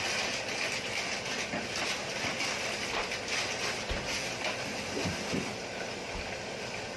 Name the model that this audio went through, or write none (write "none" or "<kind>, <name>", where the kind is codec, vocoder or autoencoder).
none